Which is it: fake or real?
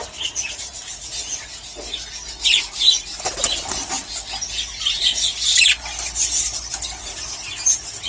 real